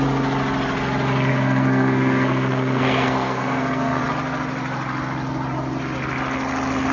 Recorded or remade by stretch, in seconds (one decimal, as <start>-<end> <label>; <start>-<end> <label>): 0.0-1.3 recorded; 1.3-4.0 remade; 4.0-6.9 recorded